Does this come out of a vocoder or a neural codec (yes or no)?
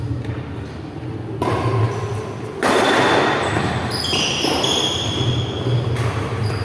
no